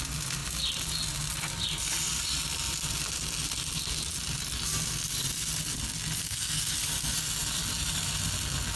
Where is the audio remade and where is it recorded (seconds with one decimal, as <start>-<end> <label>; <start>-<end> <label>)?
0.0-6.2 recorded; 6.2-6.7 remade; 6.7-8.8 recorded